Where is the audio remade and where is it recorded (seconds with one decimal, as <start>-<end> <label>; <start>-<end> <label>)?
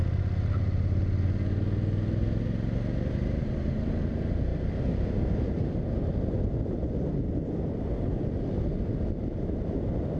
0.0-10.2 recorded